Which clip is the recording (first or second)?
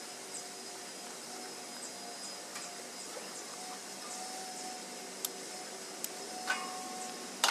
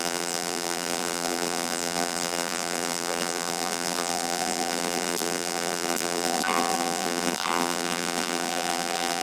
first